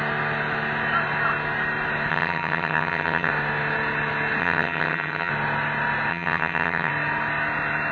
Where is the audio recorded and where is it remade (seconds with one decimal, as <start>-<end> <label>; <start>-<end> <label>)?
0.0-2.1 recorded; 2.1-3.3 remade; 3.3-4.4 recorded; 4.4-5.3 remade; 5.3-6.1 recorded; 6.1-6.9 remade; 6.9-7.9 recorded